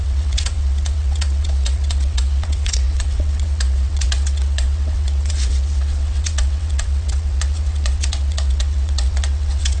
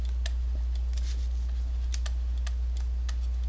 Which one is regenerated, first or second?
first